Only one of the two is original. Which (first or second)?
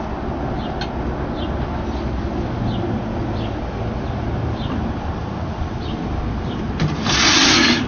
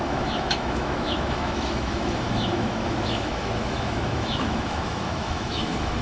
first